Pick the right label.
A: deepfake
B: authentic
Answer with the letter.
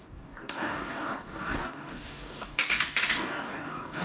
A